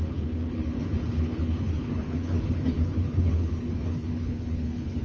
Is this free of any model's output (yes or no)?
no